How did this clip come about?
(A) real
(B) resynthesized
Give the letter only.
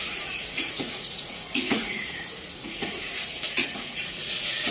B